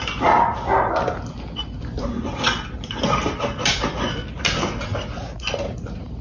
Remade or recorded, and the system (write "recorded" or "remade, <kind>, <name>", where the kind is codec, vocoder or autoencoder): recorded